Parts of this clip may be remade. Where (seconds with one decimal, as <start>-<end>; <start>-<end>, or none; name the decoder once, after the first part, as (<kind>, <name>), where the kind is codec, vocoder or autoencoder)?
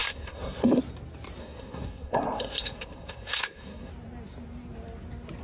0.0-0.8 (codec, SNAC); 1.4-3.9